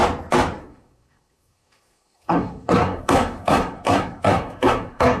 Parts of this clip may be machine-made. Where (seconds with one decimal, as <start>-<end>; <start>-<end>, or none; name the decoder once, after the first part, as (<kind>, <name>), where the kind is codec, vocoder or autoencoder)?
0.6-5.2 (codec, SNAC)